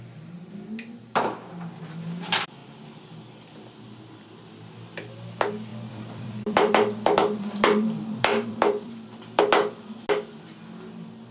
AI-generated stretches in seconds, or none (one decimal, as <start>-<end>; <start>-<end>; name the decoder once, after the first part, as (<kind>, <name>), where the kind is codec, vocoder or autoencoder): 5.7-9.4 (vocoder, BigVGAN v2)